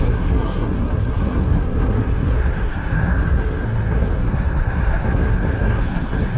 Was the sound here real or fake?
fake